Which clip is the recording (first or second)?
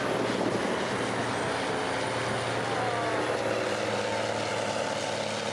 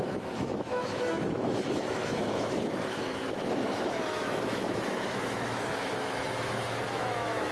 first